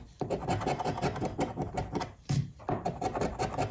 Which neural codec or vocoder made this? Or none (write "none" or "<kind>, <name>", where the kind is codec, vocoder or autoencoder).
none